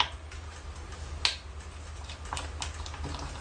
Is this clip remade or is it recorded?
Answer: recorded